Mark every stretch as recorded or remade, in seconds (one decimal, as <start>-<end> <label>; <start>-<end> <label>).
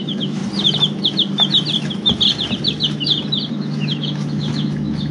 0.0-0.4 remade; 0.4-3.5 recorded; 3.5-5.1 remade